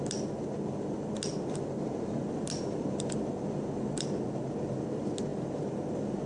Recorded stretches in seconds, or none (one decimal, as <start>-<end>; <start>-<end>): 0.0-6.3